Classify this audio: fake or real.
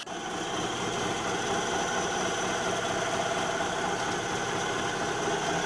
real